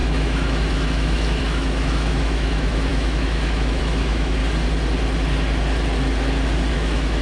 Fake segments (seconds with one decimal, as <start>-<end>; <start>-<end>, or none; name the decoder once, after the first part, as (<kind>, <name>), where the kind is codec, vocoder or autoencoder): 0.0-4.4 (autoencoder, DAC-VAE); 6.7-7.2